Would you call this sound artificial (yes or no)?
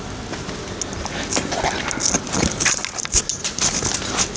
no